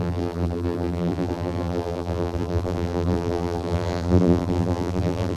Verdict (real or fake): fake